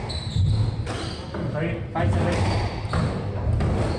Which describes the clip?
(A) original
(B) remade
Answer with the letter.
A